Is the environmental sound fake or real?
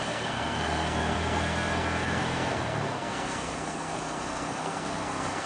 fake